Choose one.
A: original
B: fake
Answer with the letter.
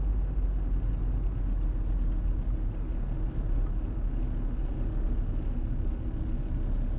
A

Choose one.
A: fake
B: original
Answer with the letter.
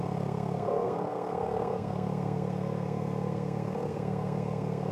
A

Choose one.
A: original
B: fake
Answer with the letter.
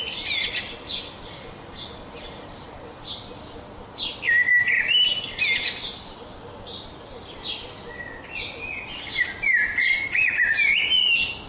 A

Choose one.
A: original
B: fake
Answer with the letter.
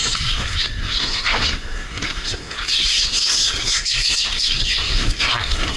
B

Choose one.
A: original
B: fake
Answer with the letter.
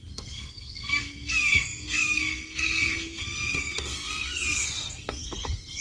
B